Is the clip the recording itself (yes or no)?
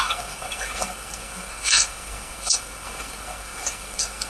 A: no